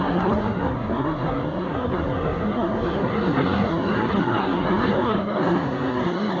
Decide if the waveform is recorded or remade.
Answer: remade